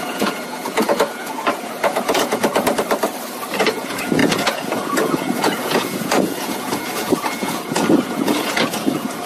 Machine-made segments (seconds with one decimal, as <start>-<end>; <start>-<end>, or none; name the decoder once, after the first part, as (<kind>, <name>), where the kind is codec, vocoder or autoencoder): 0.0-2.5 (vocoder, Vocos); 3.6-9.3